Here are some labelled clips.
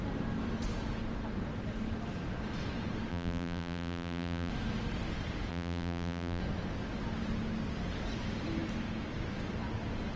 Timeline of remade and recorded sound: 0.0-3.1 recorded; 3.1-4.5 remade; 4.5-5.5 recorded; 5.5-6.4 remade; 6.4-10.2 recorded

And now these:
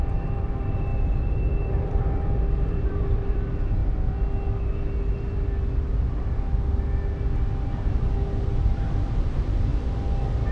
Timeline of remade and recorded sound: 0.0-3.8 remade; 3.8-8.6 recorded; 8.6-9.7 remade; 9.7-10.5 recorded